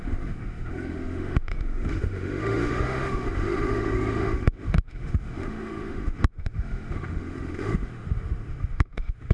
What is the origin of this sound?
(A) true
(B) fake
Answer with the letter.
B